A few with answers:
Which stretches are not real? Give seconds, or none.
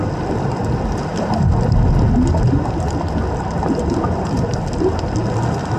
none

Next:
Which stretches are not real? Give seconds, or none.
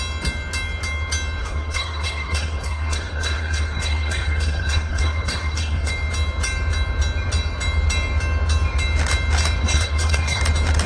1.4-5.9 (codec, SNAC); 9.6-10.4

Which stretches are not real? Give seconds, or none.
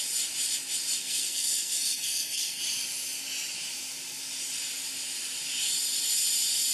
1.0-2.6 (codec, SNAC)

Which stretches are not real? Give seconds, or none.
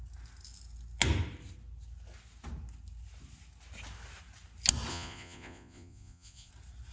4.9-6.5 (vocoder, Vocos)